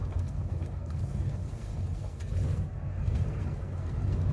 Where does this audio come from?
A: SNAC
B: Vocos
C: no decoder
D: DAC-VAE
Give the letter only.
A